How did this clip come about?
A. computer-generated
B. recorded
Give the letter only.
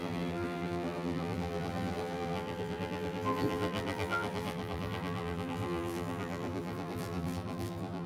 A